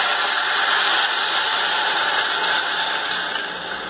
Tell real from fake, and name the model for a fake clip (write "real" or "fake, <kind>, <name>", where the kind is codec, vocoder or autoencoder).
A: real